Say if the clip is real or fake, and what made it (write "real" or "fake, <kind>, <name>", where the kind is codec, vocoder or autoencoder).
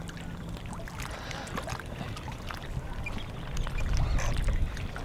real